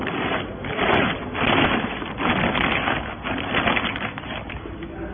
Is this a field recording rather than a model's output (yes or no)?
yes